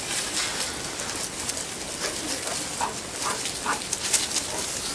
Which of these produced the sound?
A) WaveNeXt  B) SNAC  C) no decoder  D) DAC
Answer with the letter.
C